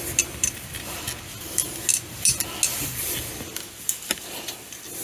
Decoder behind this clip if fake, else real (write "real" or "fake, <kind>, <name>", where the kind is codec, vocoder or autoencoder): real